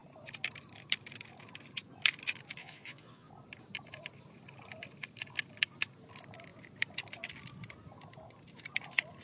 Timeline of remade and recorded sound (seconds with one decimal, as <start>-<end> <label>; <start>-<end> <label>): 0.0-2.6 recorded; 2.6-3.3 remade; 3.3-9.2 recorded